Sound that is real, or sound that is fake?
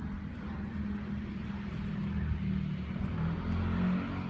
real